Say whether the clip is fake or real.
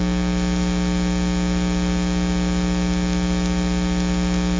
real